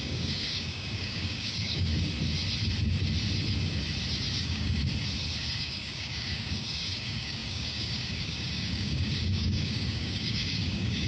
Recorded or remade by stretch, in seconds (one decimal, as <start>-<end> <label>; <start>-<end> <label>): 0.0-1.9 remade; 1.9-4.3 recorded; 4.3-4.8 remade; 4.8-5.6 recorded; 5.6-11.1 remade